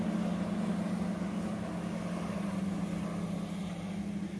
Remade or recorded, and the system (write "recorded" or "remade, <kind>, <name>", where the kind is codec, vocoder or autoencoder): recorded